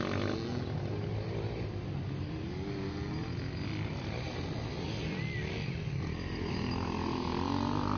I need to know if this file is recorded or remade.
recorded